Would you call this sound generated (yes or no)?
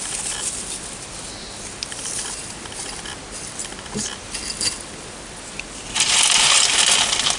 no